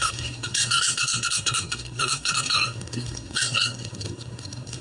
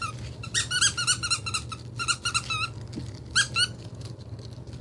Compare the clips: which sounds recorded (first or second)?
second